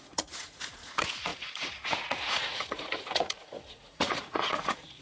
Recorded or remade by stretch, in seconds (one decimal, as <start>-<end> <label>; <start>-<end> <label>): 0.0-5.0 remade